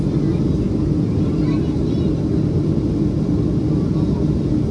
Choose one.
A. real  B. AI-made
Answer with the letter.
A